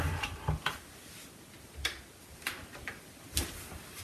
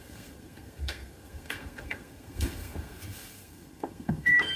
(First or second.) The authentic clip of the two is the first